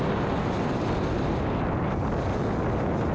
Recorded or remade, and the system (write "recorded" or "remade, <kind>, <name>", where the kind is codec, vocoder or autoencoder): recorded